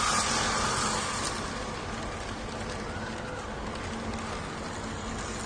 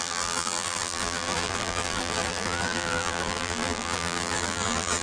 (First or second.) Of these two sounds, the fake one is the second